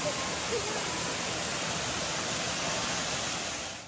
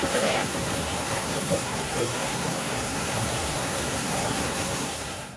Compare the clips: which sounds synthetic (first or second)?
second